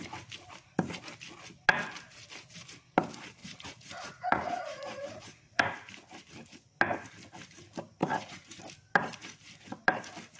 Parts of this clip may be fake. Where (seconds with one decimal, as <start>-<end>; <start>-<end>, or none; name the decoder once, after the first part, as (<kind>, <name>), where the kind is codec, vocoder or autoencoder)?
3.4-5.6 (vocoder, Vocos); 8.0-8.6